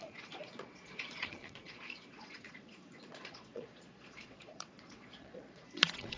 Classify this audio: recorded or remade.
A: remade